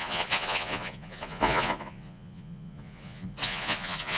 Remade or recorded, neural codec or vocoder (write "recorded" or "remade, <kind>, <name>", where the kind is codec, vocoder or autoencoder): remade, vocoder, Vocos